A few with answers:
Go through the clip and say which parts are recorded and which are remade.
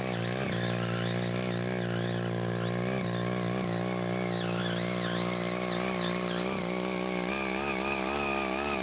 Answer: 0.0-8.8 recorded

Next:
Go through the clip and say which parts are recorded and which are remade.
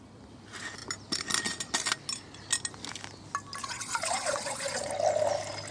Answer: 0.0-3.6 recorded; 3.6-4.9 remade; 4.9-5.7 recorded